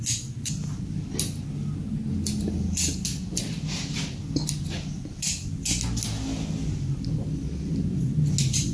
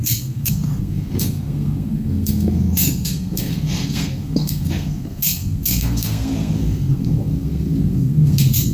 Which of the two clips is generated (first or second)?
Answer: second